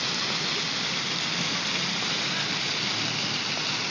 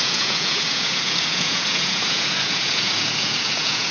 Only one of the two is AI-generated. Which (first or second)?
second